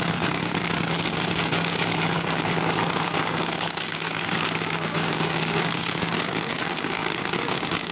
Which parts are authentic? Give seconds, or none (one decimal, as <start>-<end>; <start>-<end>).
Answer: none